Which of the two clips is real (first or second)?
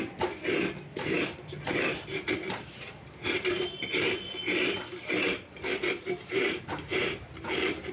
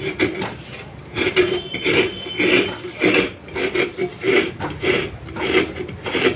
second